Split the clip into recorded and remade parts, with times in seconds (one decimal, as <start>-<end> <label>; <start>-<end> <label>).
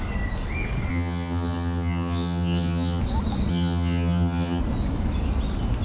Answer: 0.0-0.9 recorded; 0.9-3.0 remade; 3.0-3.5 recorded; 3.5-4.6 remade; 4.6-5.8 recorded